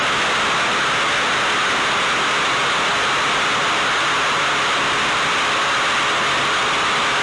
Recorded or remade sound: recorded